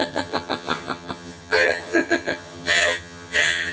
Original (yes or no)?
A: no